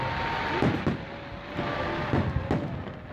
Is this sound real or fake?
real